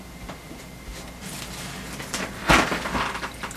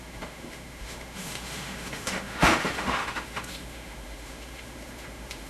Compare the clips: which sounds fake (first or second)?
second